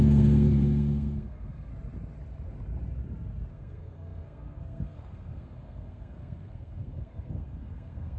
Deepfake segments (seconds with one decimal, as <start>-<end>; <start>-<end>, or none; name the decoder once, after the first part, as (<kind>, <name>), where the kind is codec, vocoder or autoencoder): 0.0-1.7 (codec, SNAC); 3.5-8.2